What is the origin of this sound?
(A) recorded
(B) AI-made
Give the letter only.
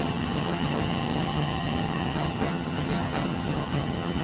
B